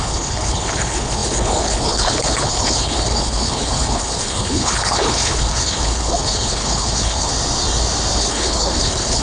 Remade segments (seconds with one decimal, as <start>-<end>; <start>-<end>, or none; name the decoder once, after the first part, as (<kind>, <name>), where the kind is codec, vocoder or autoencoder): 0.0-7.3 (codec, HILCodec); 8.2-9.2